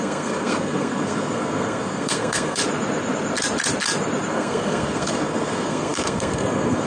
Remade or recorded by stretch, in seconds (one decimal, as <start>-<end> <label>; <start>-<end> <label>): 0.0-2.6 remade; 2.6-4.3 recorded; 4.3-6.9 remade